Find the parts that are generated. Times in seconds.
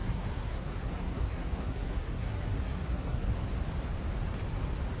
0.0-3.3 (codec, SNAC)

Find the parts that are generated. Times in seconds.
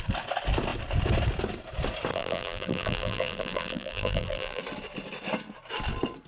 2.1-4.6 (vocoder, BigVGAN v2)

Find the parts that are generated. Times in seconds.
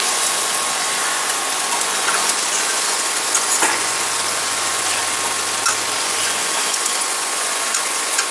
0.0-5.0 (vocoder, Vocos); 6.0-8.3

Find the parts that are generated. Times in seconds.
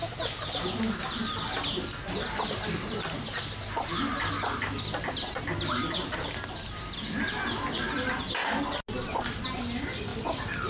none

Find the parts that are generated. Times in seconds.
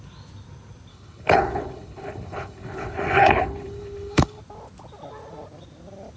0.9-4.4 (codec, HILCodec)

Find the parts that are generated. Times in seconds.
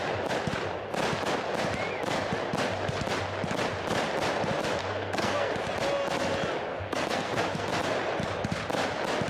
4.8-5.5 (codec, SNAC); 6.7-7.7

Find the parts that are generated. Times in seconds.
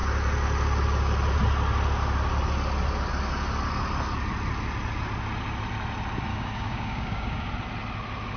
6.3-7.5 (codec, DAC)